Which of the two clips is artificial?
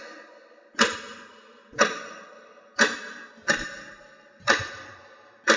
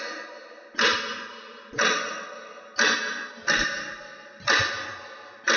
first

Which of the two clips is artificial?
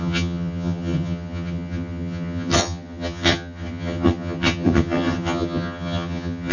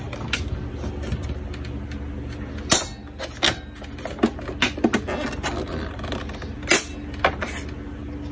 first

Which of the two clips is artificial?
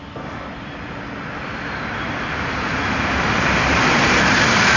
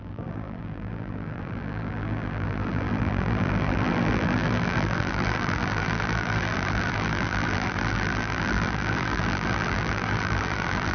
second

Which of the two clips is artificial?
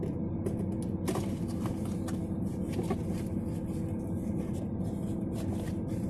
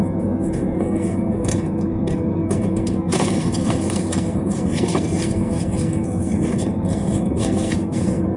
second